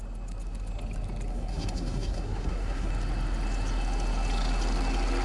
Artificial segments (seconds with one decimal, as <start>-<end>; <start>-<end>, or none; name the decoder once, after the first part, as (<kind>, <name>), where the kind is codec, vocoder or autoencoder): 1.3-2.9 (codec, SNAC)